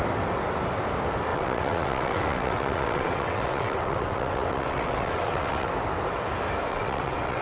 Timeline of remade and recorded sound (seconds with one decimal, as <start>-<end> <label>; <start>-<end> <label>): 0.0-1.3 recorded; 1.3-5.7 remade; 5.7-6.7 recorded; 6.7-7.4 remade